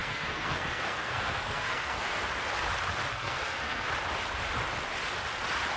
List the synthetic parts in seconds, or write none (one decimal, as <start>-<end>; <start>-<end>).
0.0-2.2; 3.1-3.9